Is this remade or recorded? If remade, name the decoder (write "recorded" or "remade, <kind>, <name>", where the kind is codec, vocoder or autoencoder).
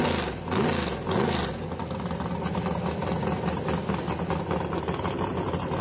recorded